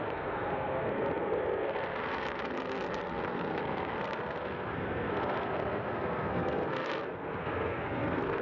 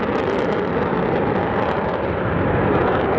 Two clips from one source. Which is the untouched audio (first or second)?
second